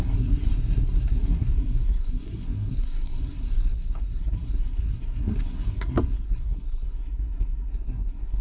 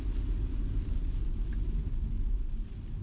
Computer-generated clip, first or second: first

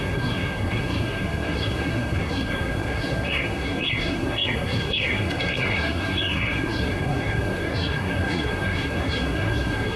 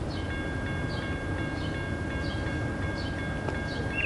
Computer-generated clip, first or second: first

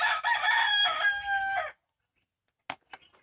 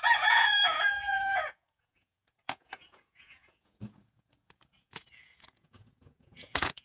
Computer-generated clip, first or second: second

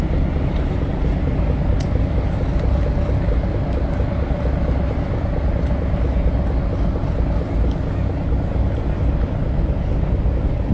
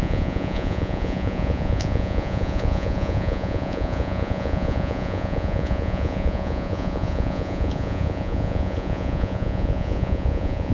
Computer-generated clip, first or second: second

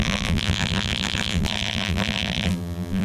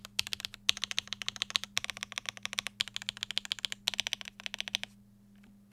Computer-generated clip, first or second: first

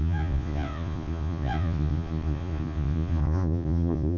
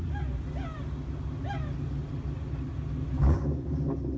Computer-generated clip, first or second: first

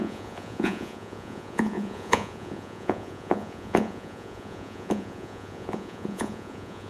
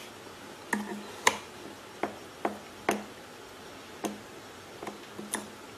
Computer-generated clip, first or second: first